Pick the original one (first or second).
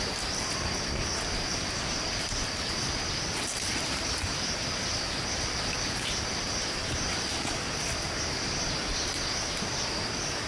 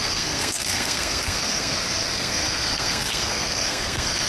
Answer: first